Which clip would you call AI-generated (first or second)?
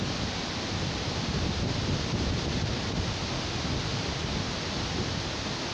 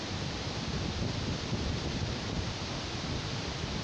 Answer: second